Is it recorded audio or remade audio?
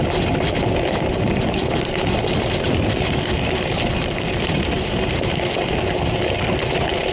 recorded